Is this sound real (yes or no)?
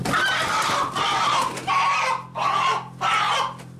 yes